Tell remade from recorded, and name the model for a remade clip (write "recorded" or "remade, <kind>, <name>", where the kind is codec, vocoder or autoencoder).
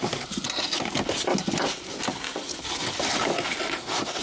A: recorded